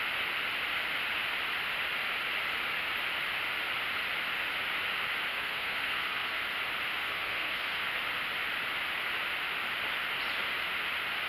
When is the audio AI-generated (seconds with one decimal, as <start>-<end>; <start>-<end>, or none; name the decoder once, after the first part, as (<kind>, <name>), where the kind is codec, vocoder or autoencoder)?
5.3-6.4 (codec, SNAC); 6.9-8.0

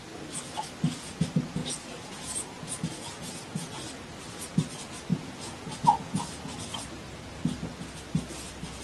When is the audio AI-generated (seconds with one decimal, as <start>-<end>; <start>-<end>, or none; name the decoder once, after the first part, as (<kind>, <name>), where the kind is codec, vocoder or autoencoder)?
1.6-3.7 (vocoder, Vocos); 5.1-6.5

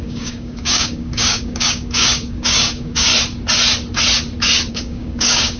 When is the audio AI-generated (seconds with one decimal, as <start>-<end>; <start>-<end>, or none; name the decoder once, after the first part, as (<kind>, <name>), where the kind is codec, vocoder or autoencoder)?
0.0-3.1 (codec, DAC); 4.7-5.6

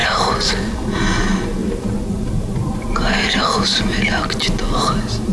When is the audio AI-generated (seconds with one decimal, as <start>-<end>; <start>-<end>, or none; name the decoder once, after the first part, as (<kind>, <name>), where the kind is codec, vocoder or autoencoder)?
0.0-0.7 (vocoder, BigVGAN v2); 1.6-3.8